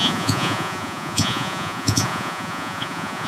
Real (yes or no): no